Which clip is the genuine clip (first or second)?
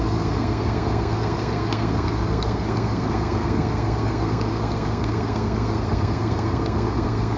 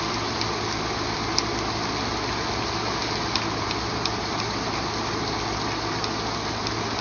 second